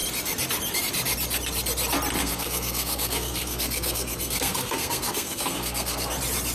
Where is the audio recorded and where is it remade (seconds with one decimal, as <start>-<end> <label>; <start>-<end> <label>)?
0.0-2.2 recorded; 2.2-6.1 remade; 6.1-6.5 recorded